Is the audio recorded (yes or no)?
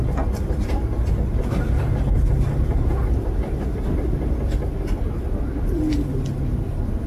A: yes